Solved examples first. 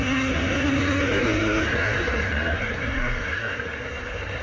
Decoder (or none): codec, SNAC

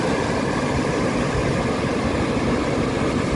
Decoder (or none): none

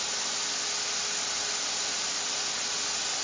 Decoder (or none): none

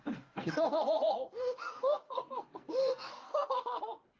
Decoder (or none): codec, SNAC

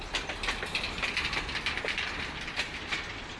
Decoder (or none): none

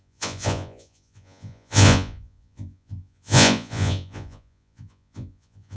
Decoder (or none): vocoder, Vocos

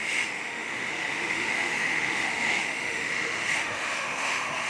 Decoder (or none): autoencoder, DAC-VAE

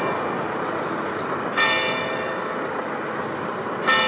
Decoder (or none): none